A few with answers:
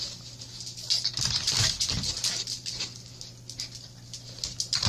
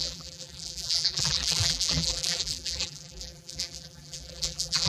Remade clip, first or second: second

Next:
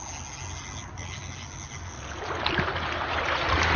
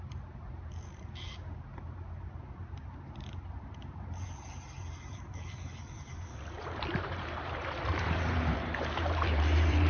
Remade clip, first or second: second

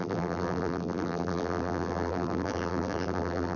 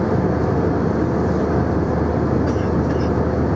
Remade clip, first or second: first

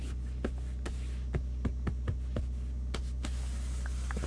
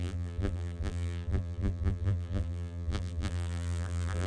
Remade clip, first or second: second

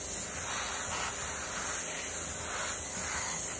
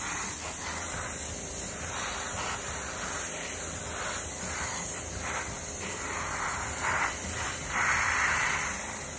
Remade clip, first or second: second